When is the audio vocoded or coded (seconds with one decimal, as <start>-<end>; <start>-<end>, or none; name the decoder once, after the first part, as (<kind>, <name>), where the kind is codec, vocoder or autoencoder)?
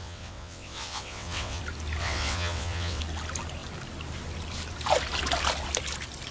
0.0-1.6 (vocoder, WaveNeXt); 2.0-3.0